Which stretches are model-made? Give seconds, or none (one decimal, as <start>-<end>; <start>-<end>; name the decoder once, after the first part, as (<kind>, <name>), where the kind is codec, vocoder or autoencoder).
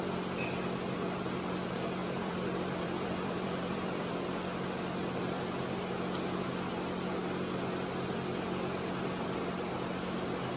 2.0-4.1 (vocoder, BigVGAN v2)